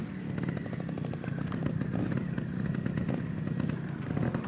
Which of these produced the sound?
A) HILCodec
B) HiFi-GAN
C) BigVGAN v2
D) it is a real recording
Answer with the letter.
D